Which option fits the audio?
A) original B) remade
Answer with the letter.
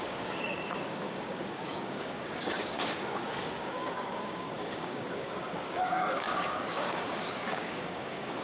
B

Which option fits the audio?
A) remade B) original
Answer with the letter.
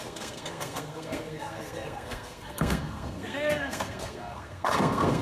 A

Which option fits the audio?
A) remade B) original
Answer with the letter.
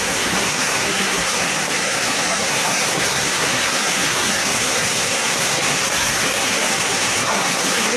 A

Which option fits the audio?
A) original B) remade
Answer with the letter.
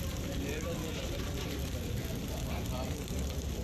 B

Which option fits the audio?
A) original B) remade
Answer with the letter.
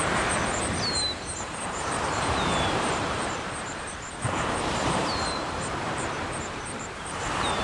B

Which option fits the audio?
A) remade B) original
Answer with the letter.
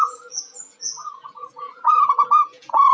A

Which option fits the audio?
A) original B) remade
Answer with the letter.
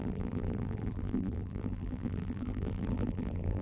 B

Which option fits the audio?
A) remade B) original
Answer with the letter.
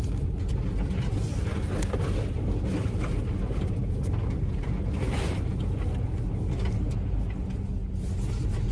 B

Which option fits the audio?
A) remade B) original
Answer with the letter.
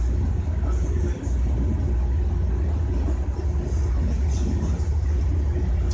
B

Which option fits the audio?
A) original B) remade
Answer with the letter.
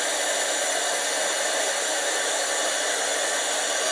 A